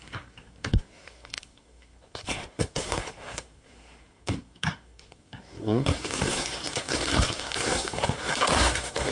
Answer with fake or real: fake